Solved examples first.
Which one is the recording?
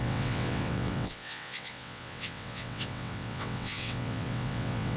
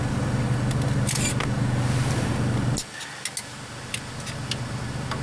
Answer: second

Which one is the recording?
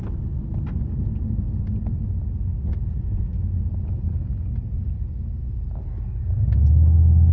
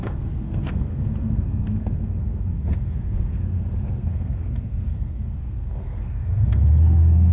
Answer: first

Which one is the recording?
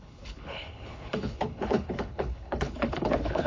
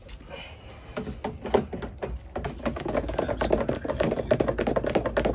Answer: second